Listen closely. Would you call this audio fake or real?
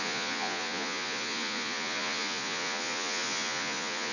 fake